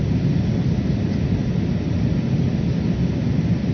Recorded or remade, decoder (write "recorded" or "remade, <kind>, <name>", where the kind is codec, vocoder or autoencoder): recorded